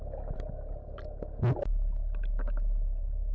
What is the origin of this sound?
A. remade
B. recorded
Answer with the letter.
B